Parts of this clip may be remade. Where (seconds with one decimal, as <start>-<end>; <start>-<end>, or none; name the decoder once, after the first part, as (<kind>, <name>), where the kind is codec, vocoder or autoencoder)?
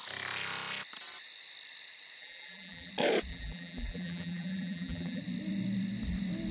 2.2-2.9 (vocoder, BigVGAN v2); 3.3-5.2